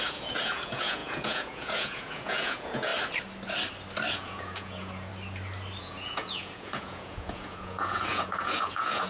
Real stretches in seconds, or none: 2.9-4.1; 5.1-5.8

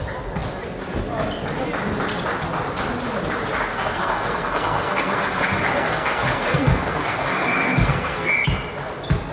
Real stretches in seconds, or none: 0.0-3.7; 8.3-9.3

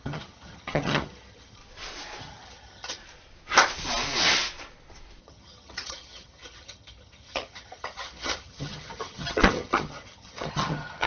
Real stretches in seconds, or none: 1.6-2.2; 3.0-5.2

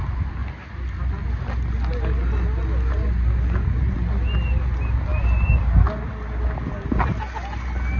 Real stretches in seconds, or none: 0.0-8.0

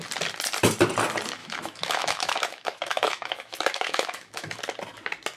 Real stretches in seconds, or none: 0.0-1.4; 4.6-5.4